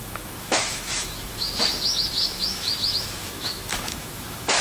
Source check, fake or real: fake